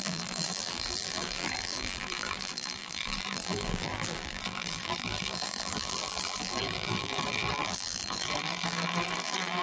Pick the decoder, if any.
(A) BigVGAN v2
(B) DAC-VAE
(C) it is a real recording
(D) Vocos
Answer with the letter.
A